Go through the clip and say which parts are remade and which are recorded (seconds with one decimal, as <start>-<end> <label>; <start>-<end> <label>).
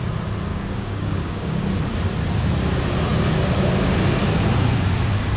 0.0-0.5 recorded; 0.5-1.6 remade; 1.6-5.4 recorded